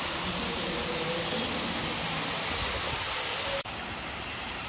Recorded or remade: recorded